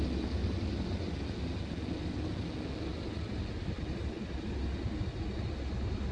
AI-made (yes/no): no